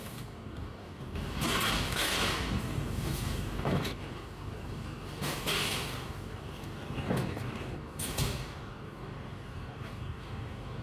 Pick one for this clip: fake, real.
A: fake